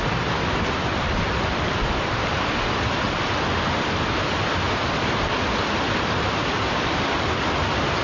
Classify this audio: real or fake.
real